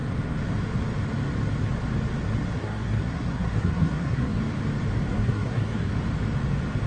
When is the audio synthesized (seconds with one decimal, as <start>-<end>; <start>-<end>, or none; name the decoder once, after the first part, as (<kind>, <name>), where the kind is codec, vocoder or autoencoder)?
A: 2.6-4.4 (codec, SNAC); 5.1-5.9